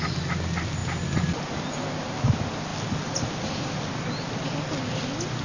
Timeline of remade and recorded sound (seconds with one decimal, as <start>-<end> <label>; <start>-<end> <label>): 0.0-5.4 recorded